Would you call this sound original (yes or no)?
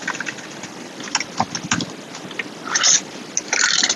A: yes